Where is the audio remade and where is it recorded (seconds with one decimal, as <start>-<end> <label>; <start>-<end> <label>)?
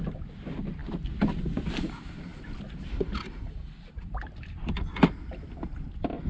0.0-6.3 recorded